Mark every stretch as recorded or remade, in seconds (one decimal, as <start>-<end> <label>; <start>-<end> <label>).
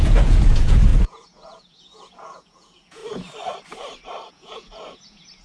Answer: 0.0-3.0 remade; 3.0-4.3 recorded; 4.3-5.4 remade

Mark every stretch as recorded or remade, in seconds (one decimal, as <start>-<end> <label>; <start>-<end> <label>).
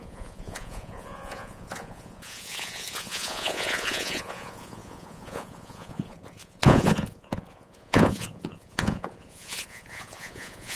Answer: 0.0-10.8 remade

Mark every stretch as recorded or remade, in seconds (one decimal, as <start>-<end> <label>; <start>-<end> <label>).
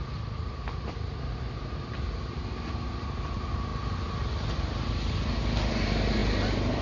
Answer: 0.0-6.8 recorded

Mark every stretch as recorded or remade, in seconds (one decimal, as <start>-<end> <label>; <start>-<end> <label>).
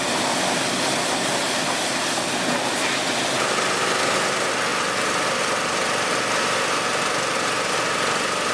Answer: 0.0-8.5 recorded